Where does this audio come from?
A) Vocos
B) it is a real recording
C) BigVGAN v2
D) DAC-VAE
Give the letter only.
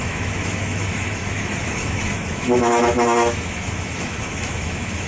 D